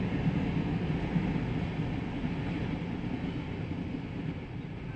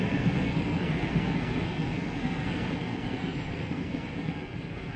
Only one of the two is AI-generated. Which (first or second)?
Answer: second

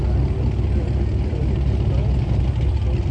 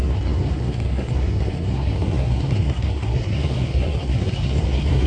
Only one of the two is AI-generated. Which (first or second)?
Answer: second